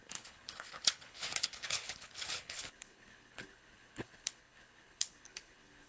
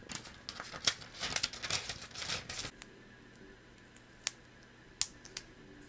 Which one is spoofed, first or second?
first